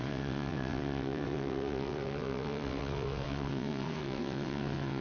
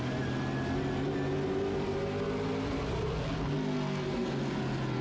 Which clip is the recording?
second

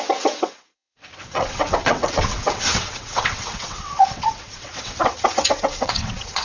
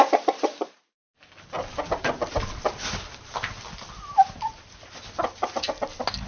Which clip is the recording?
second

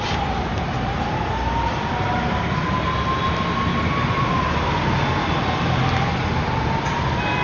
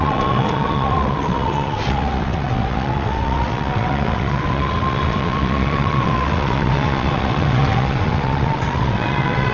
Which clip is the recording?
first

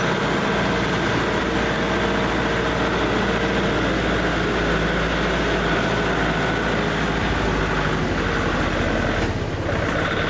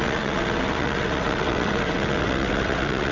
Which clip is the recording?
first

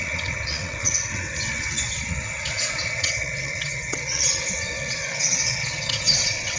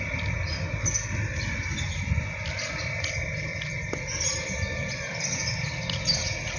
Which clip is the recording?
second